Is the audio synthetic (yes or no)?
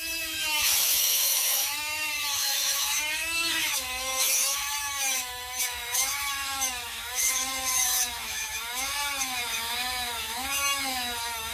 yes